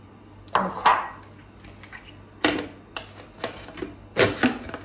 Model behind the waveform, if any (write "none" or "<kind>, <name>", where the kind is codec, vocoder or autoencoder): none